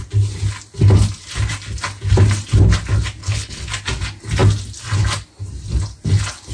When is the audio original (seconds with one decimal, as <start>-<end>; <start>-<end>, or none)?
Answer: 0.0-3.2; 3.7-6.5